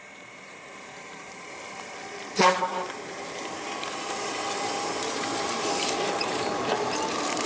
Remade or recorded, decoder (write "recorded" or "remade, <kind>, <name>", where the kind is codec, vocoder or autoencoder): remade, vocoder, BigVGAN v2